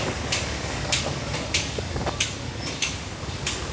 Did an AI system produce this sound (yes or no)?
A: yes